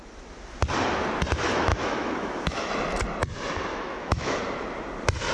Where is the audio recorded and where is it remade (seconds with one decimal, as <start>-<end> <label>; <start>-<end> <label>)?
0.0-1.7 recorded; 1.7-2.7 remade; 2.7-3.7 recorded; 3.7-4.4 remade; 4.4-5.3 recorded